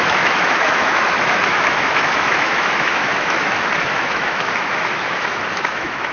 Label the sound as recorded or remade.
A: remade